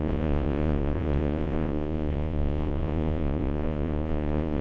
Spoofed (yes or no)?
yes